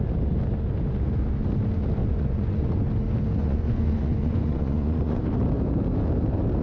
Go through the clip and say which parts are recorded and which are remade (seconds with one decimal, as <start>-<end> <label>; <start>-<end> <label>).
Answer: 0.0-2.0 recorded; 2.0-2.8 remade; 2.8-3.4 recorded; 3.4-5.2 remade; 5.2-6.6 recorded